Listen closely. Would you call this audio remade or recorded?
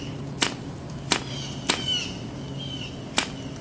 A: recorded